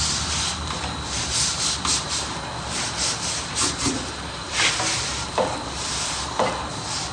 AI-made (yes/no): no